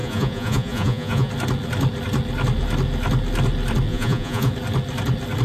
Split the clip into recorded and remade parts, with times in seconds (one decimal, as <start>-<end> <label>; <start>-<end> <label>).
0.0-1.3 remade; 1.3-3.9 recorded; 3.9-4.5 remade; 4.5-5.4 recorded